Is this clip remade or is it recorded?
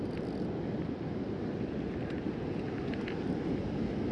recorded